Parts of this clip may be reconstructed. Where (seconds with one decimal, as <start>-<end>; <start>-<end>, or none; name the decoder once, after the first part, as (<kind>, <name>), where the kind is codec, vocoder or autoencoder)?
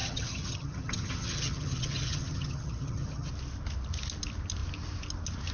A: 0.0-3.3 (vocoder, HiFi-GAN)